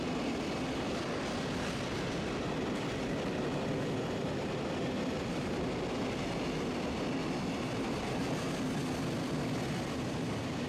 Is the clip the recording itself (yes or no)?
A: yes